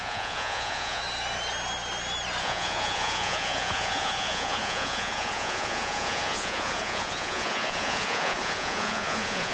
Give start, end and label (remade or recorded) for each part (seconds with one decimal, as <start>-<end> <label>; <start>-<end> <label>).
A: 0.0-1.0 remade; 1.0-2.4 recorded; 2.4-9.5 remade